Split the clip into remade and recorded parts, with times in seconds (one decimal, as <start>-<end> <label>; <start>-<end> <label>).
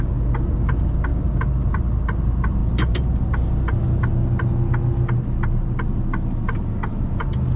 0.0-1.1 recorded; 1.1-1.7 remade; 1.7-2.6 recorded; 2.6-3.2 remade; 3.2-6.9 recorded; 6.9-7.6 remade